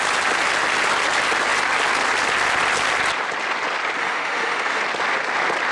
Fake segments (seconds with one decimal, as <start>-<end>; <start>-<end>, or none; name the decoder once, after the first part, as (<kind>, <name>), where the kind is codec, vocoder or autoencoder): 4.0-4.8 (autoencoder, DAC-VAE)